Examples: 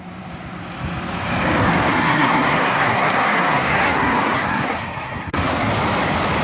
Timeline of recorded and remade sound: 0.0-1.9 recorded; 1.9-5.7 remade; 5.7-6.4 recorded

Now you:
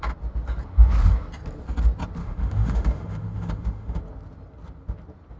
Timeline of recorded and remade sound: 0.0-2.2 recorded; 2.2-4.0 remade; 4.0-5.4 recorded

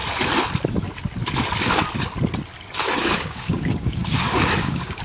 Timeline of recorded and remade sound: 0.0-3.0 recorded; 3.0-5.0 remade

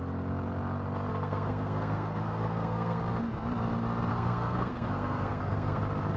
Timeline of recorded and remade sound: 0.0-1.1 recorded; 1.1-3.0 remade; 3.0-4.1 recorded; 4.1-5.8 remade; 5.8-6.2 recorded